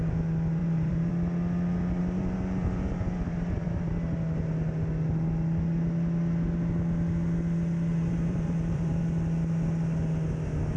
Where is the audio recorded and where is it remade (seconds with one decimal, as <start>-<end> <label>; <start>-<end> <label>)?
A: 0.0-0.6 recorded; 0.6-1.1 remade; 1.1-2.0 recorded; 2.0-3.9 remade; 3.9-7.9 recorded; 7.9-9.0 remade; 9.0-10.8 recorded